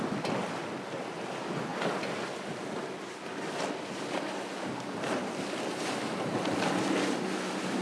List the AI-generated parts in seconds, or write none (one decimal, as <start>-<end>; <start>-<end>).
none